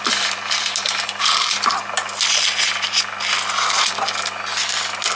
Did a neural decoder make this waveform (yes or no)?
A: no